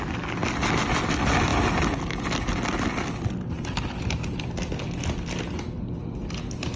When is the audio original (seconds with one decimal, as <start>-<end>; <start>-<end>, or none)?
0.0-6.8